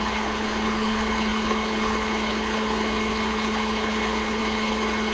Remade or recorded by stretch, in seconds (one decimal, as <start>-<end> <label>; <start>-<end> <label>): 0.0-5.1 remade